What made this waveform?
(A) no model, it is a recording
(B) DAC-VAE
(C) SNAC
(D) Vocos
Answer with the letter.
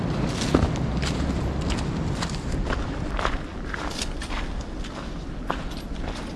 A